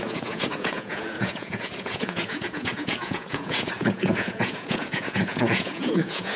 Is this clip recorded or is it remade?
remade